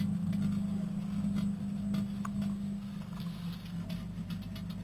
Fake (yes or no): no